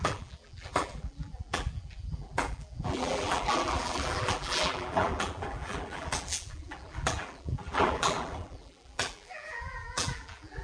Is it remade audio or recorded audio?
remade